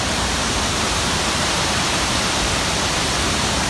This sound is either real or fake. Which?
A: fake